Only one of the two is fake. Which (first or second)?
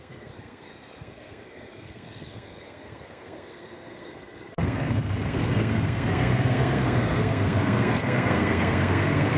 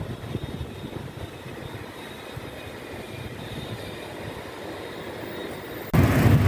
first